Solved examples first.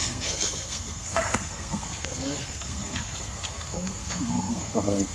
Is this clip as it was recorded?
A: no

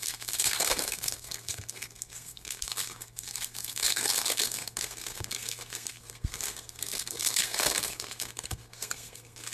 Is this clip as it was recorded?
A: no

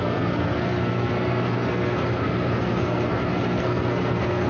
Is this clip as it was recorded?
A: no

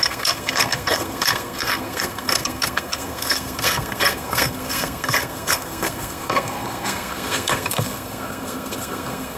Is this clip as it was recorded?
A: no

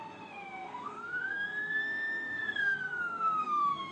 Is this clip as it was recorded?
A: no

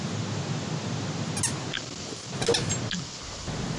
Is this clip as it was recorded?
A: yes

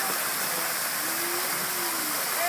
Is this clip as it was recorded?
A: yes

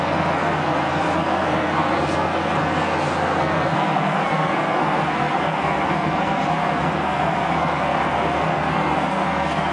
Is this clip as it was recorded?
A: no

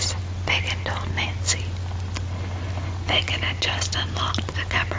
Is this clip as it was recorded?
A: yes